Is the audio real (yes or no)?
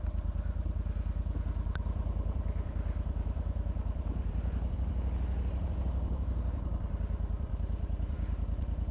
no